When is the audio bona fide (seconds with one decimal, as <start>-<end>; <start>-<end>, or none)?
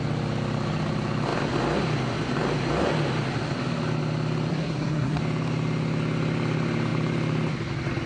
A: 0.0-4.5; 5.2-8.1